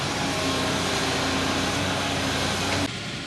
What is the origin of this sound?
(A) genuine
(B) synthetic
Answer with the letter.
A